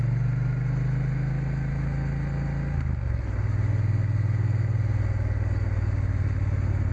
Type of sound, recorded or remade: recorded